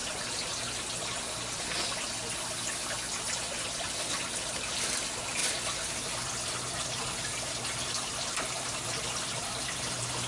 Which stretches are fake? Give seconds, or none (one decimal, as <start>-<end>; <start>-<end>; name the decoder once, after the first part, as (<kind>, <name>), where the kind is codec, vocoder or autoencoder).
none